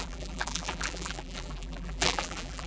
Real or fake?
fake